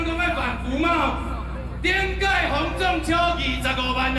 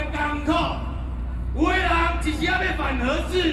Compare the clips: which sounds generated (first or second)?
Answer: second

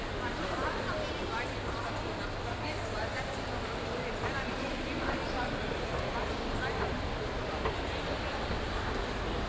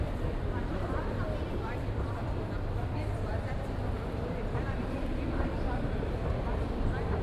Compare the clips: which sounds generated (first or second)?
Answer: second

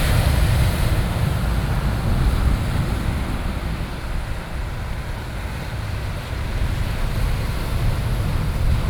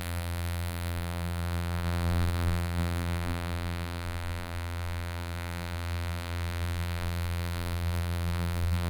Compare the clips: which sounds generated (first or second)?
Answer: second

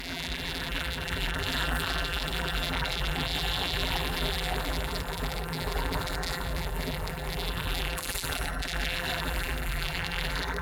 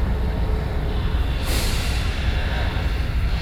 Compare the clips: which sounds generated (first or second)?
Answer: first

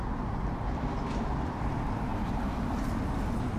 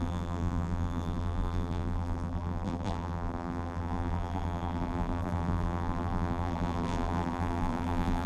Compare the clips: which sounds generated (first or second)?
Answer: second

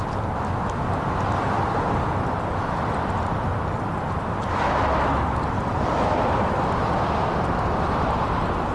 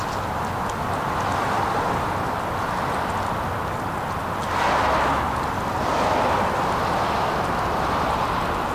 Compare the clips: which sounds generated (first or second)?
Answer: first